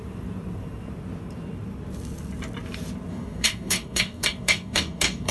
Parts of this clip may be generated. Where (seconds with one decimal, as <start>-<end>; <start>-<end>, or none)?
3.1-5.3